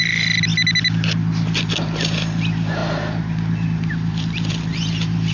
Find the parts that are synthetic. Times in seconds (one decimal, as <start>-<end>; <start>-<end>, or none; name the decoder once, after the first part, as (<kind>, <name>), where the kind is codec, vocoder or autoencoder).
none

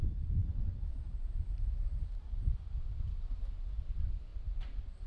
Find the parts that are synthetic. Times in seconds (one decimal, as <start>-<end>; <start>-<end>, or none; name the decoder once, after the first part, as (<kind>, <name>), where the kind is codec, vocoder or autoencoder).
0.0-5.1 (vocoder, BigVGAN v2)